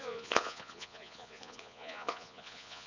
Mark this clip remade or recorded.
remade